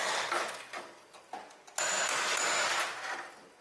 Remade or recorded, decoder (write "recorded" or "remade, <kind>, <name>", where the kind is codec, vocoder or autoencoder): recorded